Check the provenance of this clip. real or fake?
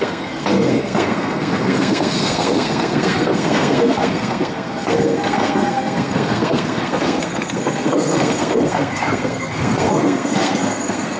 fake